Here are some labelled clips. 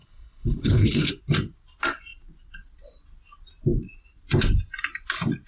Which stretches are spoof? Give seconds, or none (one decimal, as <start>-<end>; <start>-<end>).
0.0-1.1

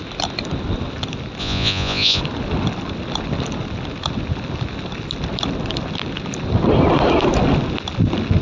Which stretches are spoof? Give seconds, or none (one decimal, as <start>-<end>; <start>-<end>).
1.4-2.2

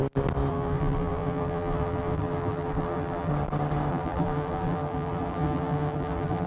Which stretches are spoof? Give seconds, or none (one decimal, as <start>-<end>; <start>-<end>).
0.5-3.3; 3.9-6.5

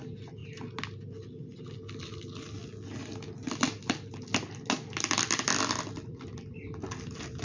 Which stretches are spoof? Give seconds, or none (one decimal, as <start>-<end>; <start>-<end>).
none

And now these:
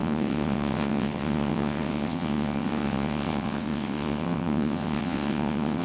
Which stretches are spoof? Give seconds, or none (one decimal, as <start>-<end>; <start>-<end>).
0.0-5.8